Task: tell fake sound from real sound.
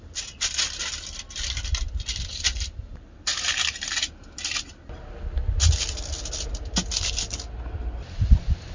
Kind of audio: real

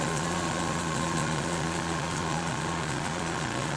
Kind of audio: fake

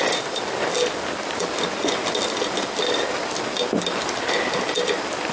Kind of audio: real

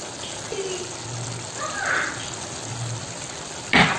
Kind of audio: real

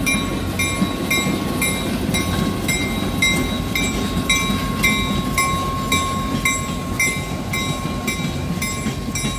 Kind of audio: real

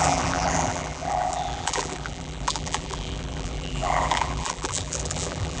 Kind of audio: fake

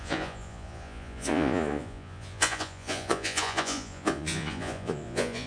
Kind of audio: fake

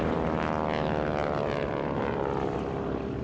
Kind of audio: real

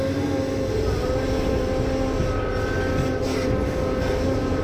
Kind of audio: real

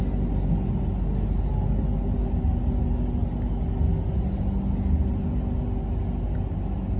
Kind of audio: real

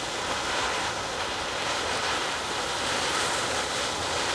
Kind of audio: real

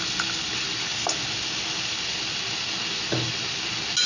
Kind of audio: real